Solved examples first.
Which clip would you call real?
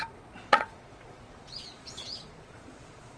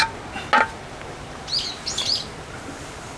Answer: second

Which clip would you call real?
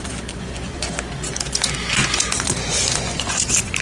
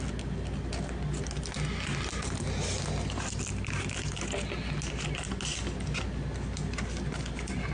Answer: second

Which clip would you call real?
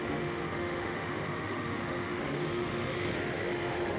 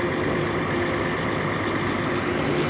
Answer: second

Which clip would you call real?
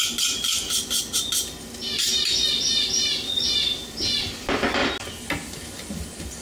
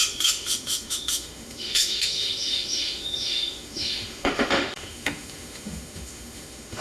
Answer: first